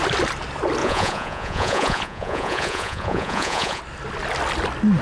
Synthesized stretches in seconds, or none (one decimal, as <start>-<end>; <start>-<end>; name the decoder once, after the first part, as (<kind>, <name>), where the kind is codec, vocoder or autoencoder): 0.8-3.8 (vocoder, Vocos)